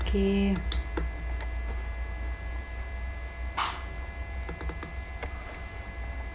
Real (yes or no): yes